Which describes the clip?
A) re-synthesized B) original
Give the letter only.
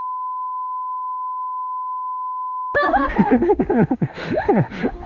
A